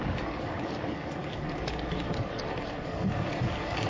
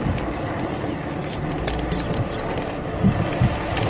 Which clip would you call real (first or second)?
second